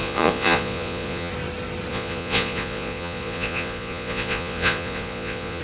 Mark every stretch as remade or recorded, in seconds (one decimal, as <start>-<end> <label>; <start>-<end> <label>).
0.0-1.3 remade; 1.3-1.9 recorded; 1.9-5.6 remade